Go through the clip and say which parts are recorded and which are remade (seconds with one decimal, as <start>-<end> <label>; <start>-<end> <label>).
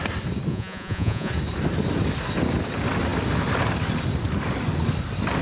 0.0-0.5 recorded; 0.5-1.3 remade; 1.3-5.4 recorded